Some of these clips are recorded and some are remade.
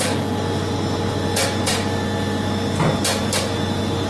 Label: recorded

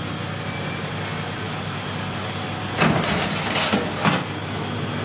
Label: recorded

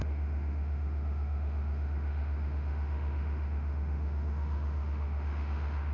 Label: remade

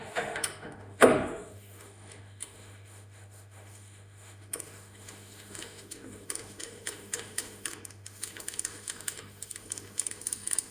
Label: remade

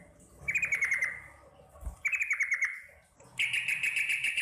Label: recorded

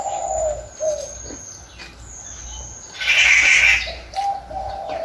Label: recorded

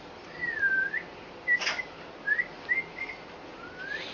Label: recorded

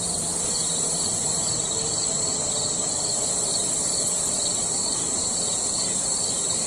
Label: remade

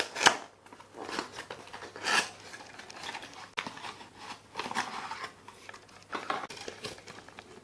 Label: recorded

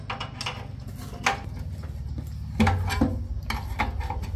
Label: recorded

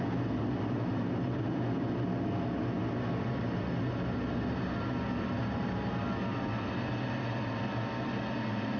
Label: recorded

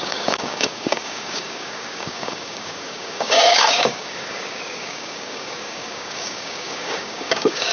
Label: remade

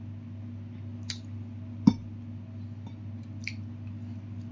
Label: recorded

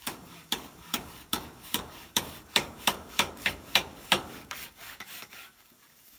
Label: remade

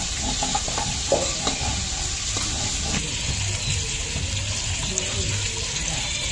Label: recorded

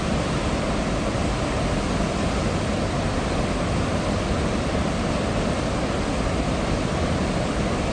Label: recorded